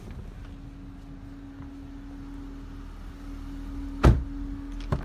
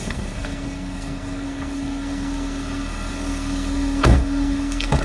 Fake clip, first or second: second